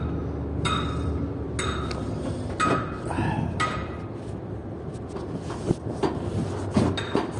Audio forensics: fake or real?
real